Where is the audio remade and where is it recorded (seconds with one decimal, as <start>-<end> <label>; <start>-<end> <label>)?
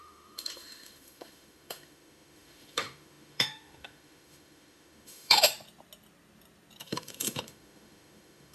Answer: 0.0-5.5 remade; 5.5-6.8 recorded; 6.8-8.5 remade